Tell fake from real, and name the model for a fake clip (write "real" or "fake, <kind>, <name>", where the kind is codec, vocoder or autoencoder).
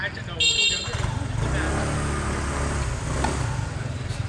real